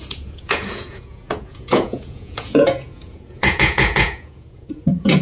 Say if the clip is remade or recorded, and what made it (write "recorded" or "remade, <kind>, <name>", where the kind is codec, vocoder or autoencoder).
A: remade, vocoder, Vocos